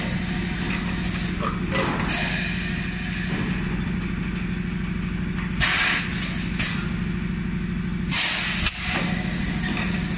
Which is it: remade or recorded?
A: recorded